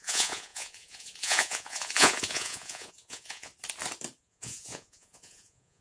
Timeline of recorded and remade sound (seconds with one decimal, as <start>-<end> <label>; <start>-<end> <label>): 0.0-3.5 remade; 3.5-4.2 recorded; 4.2-5.8 remade